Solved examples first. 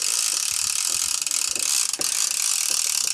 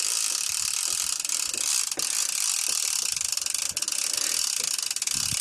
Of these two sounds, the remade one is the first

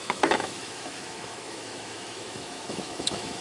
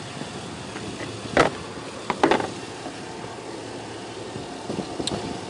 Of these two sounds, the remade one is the first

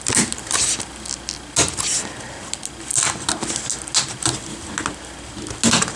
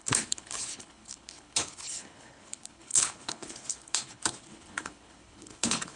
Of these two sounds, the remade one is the second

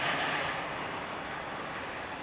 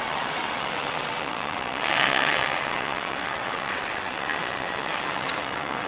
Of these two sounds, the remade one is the second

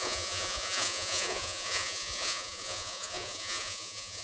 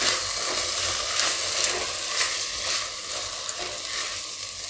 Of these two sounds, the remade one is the first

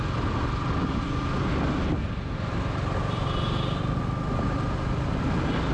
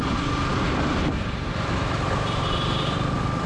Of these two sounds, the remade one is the second